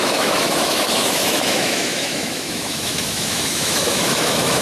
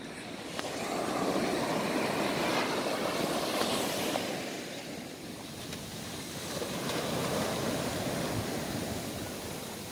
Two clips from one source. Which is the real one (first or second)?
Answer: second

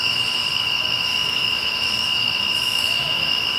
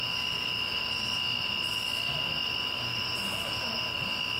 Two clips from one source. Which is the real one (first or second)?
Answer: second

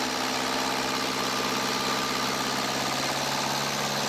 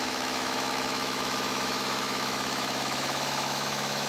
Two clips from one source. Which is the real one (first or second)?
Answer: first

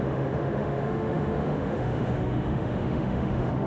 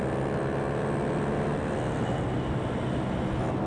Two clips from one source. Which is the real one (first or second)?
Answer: second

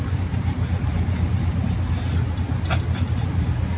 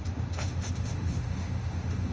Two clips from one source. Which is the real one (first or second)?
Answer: first